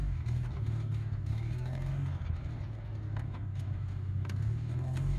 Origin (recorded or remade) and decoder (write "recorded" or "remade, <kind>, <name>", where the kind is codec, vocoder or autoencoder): remade, codec, DAC